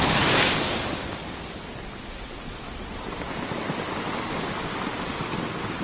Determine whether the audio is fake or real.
real